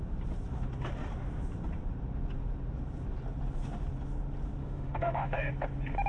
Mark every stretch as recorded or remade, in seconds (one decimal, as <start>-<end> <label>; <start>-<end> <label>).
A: 0.0-4.6 recorded; 4.6-5.5 remade; 5.5-6.1 recorded